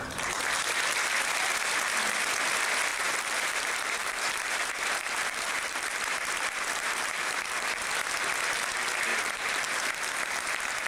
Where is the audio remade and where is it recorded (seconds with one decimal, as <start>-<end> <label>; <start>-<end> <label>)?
0.0-2.9 recorded; 2.9-7.9 remade; 7.9-9.1 recorded; 9.1-9.6 remade; 9.6-10.9 recorded